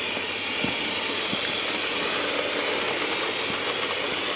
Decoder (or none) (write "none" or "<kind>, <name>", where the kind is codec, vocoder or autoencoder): none